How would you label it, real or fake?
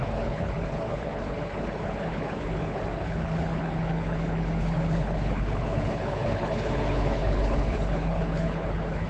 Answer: fake